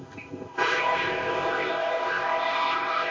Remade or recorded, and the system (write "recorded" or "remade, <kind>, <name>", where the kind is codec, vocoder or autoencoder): remade, codec, ZipCodec